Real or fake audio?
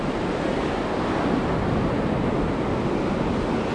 real